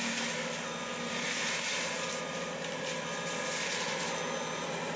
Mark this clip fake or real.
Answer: real